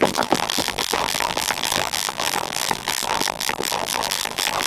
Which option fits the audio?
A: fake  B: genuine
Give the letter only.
A